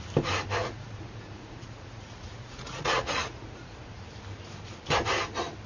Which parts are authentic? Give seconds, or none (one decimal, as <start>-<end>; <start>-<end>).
0.0-0.6; 4.0-5.7